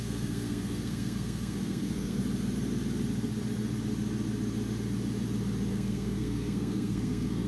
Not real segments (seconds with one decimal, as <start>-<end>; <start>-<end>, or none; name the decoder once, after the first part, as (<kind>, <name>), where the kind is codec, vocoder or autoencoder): 0.0-2.2 (codec, SNAC); 5.7-7.5